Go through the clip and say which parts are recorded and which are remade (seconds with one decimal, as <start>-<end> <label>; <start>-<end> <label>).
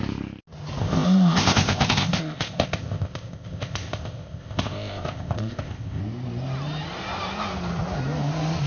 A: 0.0-0.8 recorded; 0.8-6.0 remade; 6.0-8.7 recorded